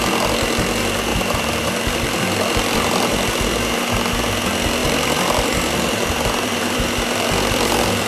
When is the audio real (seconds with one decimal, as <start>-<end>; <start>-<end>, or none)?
0.0-1.1; 3.3-4.8